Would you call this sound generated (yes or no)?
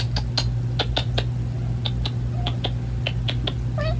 no